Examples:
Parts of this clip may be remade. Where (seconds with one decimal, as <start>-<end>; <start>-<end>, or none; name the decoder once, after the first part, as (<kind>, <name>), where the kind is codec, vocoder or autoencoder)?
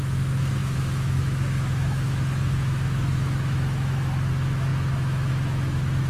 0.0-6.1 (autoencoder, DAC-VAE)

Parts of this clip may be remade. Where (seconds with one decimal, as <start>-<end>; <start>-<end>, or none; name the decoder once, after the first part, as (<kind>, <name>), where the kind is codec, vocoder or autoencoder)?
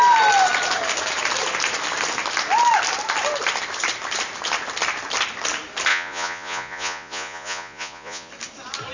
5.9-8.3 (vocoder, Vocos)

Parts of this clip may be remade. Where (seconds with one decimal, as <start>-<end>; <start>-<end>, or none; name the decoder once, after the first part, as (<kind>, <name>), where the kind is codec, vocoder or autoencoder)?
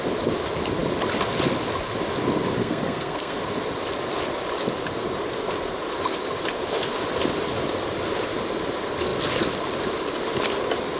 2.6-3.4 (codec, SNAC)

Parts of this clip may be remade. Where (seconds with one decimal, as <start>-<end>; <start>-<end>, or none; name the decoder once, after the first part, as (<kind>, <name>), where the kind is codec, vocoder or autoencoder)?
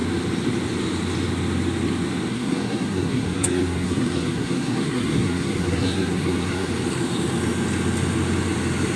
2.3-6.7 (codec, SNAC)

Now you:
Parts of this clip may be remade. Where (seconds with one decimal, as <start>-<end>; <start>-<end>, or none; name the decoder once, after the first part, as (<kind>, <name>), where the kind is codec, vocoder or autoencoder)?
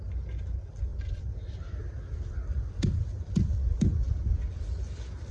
none